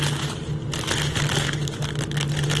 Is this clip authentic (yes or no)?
yes